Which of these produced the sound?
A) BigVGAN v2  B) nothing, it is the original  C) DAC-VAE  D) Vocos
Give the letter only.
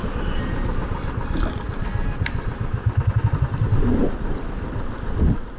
B